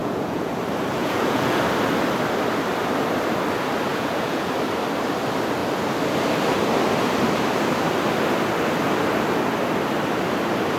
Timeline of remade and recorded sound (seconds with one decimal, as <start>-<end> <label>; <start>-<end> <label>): 0.0-0.5 remade; 0.5-1.0 recorded; 1.0-1.6 remade; 1.6-3.9 recorded; 3.9-4.5 remade; 4.5-10.8 recorded